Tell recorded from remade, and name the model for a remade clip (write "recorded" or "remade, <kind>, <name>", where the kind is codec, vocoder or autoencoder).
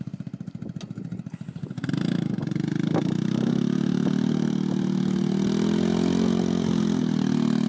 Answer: recorded